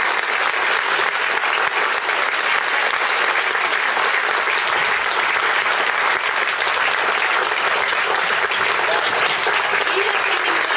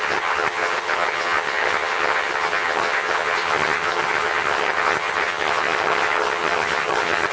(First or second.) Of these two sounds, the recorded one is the first